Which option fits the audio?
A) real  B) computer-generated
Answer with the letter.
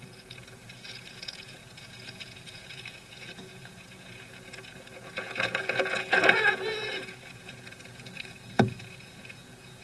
B